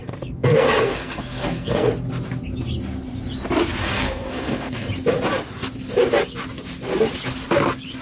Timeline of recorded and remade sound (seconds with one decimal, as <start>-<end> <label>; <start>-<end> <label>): 0.0-1.9 remade; 1.9-3.8 recorded; 3.8-4.9 remade; 4.9-8.0 recorded